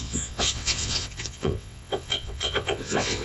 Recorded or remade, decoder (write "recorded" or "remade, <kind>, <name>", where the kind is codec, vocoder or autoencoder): remade, vocoder, WaveNeXt